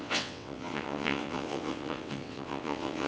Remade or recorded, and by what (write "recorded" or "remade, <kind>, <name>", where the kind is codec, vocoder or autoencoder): remade, vocoder, WaveNeXt